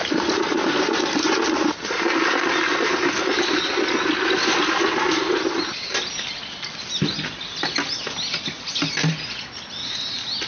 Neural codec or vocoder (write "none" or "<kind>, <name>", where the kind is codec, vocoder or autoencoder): none